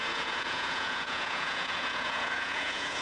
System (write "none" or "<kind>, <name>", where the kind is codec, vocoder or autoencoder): vocoder, Vocos